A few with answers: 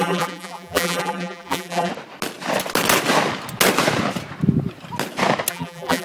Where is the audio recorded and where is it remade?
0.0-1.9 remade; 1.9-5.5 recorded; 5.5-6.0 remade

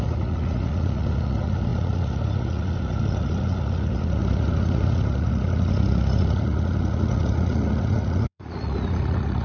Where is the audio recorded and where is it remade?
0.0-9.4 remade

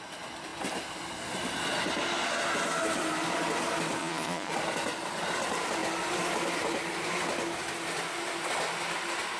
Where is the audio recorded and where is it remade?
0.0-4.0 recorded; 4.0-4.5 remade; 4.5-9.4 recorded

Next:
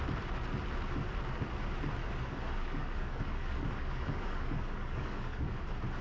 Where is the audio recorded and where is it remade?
0.0-2.0 recorded; 2.0-5.6 remade; 5.6-6.0 recorded

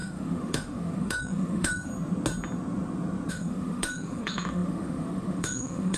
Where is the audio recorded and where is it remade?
0.0-1.9 remade; 1.9-3.3 recorded; 3.3-6.0 remade

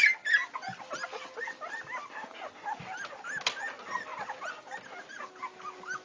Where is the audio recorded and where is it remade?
0.0-6.0 recorded